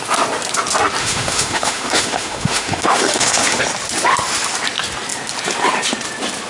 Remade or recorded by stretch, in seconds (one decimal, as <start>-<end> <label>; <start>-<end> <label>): 0.0-1.0 recorded; 1.0-3.6 remade; 3.6-6.5 recorded